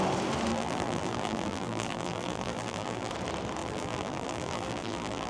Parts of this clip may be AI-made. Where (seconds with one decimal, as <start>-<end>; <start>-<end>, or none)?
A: 0.5-3.1; 3.6-5.3